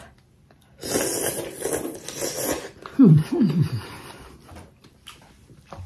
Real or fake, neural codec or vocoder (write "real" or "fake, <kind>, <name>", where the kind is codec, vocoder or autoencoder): real